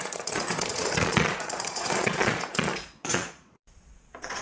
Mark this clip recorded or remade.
remade